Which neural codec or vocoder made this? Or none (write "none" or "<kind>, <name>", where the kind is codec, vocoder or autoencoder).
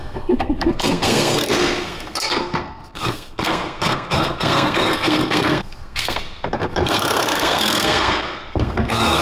codec, SNAC